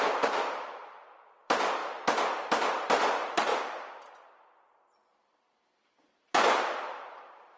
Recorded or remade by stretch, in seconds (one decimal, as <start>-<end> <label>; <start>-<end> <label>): 0.0-1.8 remade; 1.8-2.5 recorded; 2.5-3.5 remade; 3.5-6.3 recorded; 6.3-7.6 remade